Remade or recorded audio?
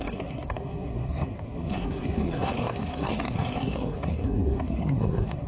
remade